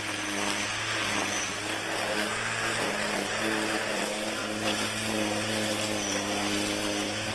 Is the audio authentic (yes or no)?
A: yes